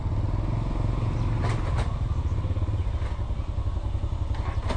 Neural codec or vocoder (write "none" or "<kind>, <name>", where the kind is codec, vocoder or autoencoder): none